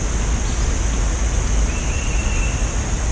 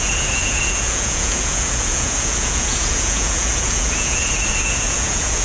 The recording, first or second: first